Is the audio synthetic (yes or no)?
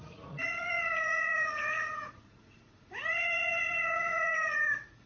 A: yes